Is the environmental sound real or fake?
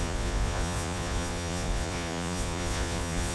fake